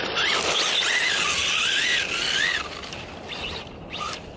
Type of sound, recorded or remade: recorded